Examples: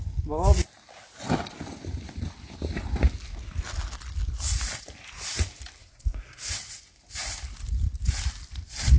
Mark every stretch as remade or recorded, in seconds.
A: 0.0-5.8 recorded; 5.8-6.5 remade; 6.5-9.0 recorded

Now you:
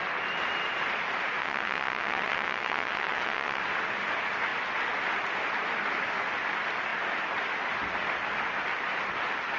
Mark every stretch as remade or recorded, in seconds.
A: 0.0-1.4 recorded; 1.4-3.6 remade; 3.6-9.6 recorded

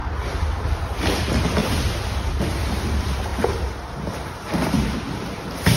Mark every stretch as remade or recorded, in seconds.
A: 0.0-1.6 recorded; 1.6-2.8 remade; 2.8-5.8 recorded

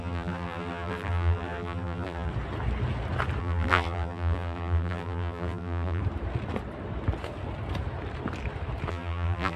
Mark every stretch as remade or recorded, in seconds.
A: 0.0-2.3 remade; 2.3-3.4 recorded; 3.4-6.0 remade; 6.0-8.9 recorded; 8.9-9.6 remade

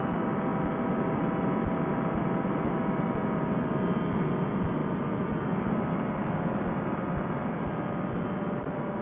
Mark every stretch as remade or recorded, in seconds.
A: 0.0-9.0 recorded